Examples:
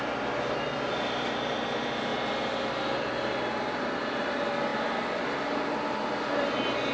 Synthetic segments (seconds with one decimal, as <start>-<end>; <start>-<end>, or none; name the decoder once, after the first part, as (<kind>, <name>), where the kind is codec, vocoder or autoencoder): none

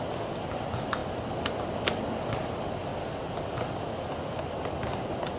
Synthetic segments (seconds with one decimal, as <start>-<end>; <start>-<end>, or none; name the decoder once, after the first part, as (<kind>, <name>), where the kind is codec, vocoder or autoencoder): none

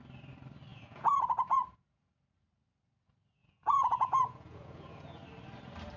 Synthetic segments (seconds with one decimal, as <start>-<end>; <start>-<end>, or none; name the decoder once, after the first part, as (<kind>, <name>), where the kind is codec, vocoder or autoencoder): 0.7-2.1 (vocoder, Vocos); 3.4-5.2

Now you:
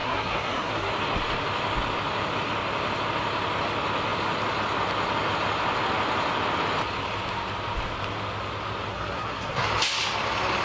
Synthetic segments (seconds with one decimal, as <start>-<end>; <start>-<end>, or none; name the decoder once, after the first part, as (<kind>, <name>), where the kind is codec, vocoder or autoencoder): 0.0-0.9 (codec, SNAC); 8.9-9.7

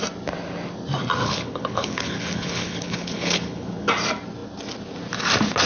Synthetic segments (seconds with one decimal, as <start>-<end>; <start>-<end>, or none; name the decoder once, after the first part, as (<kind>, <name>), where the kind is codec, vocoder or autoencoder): 1.2-3.9 (codec, HILCodec)